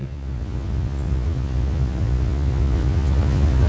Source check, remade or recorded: remade